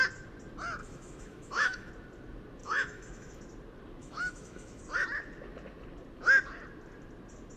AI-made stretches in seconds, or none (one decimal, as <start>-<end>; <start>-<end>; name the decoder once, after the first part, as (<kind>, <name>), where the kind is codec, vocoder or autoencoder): 0.8-1.9 (autoencoder, DAC-VAE); 2.6-3.4; 4.0-4.8